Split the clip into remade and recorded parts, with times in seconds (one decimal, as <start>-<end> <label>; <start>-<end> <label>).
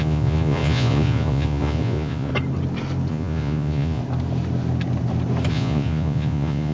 0.0-2.3 remade; 2.3-3.1 recorded; 3.1-4.0 remade; 4.0-5.5 recorded; 5.5-6.7 remade